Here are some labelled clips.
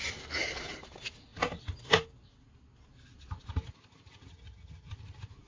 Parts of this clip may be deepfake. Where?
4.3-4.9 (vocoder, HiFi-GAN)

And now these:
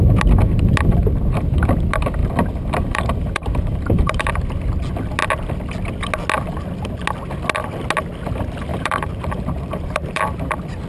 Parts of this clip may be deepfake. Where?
2.2-4.3 (vocoder, BigVGAN v2); 8.7-10.2

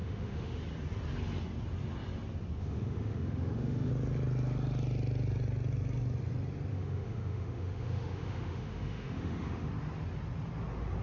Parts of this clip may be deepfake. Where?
0.0-0.6 (autoencoder, DAC-VAE); 2.6-3.9; 6.7-9.7

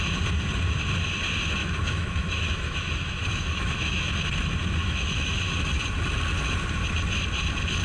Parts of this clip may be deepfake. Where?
1.6-4.1 (autoencoder, DAC-VAE); 4.8-5.4

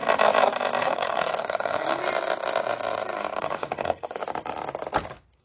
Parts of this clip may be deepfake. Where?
0.8-2.0 (codec, HILCodec); 3.4-4.2